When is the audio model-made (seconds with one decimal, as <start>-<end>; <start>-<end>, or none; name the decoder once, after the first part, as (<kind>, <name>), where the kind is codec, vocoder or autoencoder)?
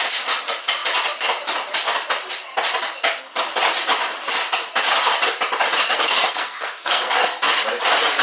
5.8-7.3 (codec, SNAC)